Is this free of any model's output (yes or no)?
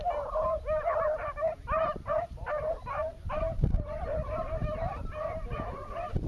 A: no